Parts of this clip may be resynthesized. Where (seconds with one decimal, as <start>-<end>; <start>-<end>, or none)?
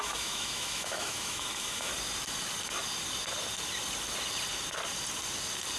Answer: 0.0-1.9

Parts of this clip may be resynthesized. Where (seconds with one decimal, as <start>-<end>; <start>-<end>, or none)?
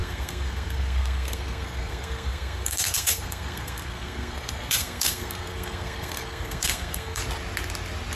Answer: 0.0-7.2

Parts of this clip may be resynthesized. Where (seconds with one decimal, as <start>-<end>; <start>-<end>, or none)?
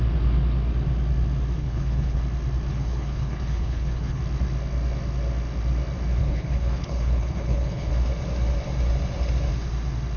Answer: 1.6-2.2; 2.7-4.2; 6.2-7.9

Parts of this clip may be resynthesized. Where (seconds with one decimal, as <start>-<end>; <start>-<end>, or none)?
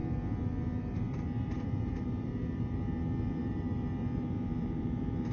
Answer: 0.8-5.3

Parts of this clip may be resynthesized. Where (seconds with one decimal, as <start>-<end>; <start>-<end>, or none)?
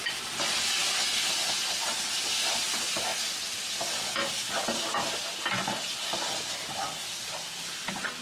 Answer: none